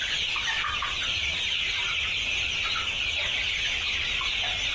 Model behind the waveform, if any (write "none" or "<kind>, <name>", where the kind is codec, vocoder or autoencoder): none